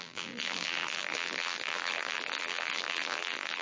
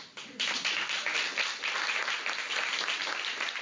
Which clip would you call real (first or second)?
second